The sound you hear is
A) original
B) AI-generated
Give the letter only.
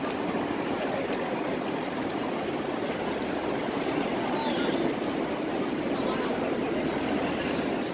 A